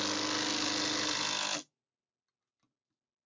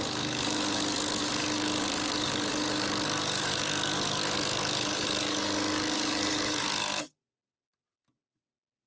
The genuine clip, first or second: first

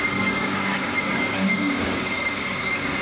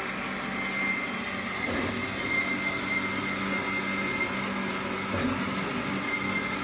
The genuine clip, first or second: second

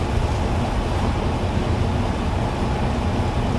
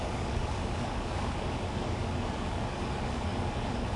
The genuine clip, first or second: first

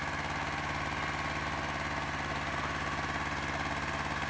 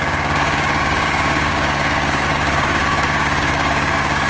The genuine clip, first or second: first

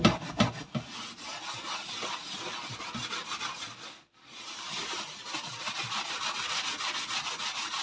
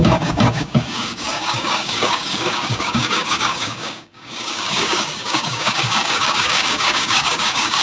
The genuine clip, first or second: first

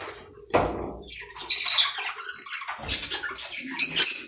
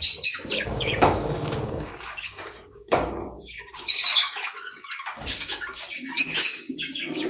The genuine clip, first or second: first